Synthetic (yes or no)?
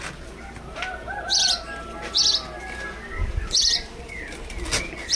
no